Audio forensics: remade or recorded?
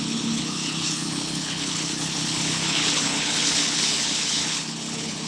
remade